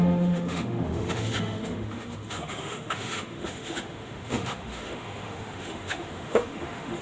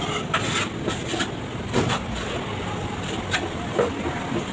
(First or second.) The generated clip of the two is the first